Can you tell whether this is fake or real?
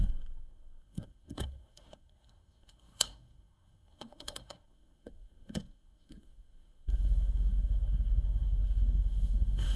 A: fake